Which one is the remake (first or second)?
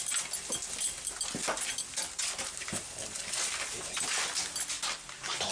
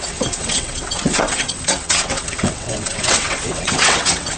second